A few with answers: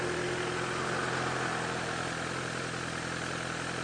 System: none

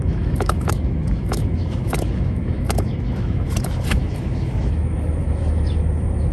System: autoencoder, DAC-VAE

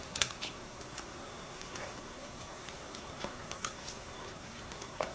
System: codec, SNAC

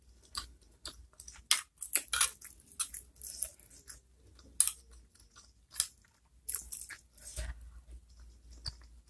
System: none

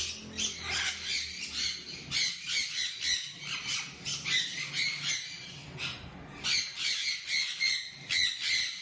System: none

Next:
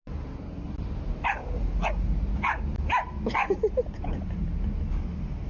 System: none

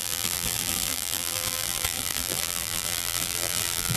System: vocoder, BigVGAN v2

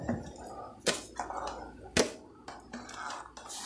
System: none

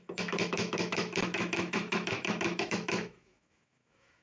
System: autoencoder, DAC-VAE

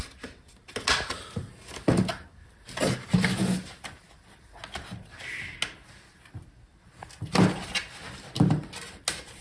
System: none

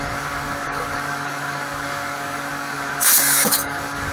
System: codec, DAC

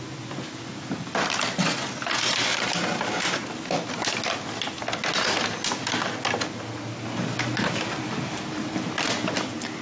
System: none